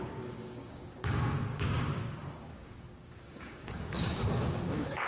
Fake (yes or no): yes